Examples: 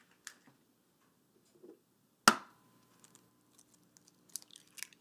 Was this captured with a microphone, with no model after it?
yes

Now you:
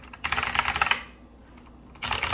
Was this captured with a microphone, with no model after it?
yes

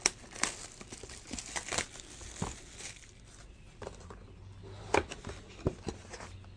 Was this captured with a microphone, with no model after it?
yes